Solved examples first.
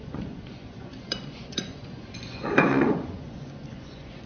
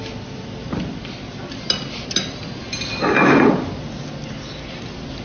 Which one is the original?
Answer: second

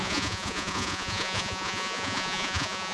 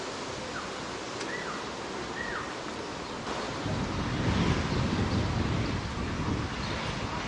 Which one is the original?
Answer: second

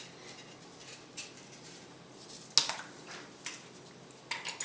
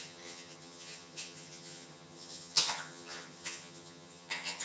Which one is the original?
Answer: first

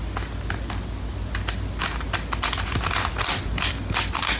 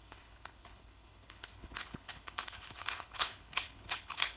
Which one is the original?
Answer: first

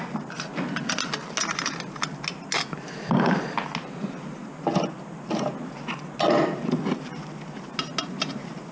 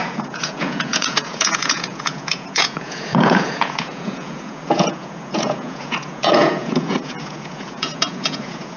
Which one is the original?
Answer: first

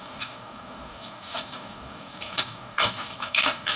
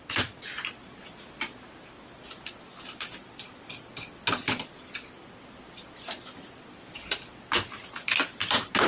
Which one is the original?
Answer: second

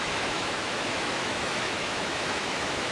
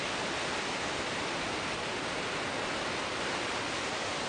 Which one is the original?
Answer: second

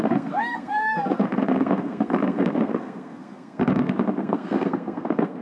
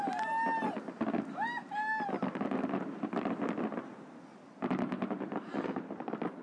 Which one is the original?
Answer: second